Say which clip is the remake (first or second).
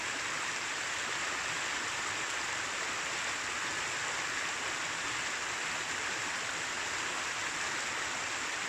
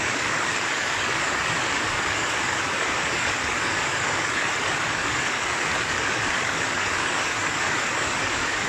second